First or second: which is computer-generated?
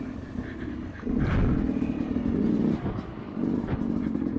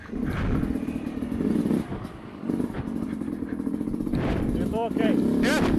second